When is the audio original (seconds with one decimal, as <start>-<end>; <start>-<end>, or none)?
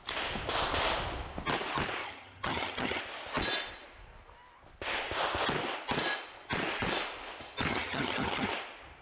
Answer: 0.0-2.0; 3.0-7.7; 8.5-9.0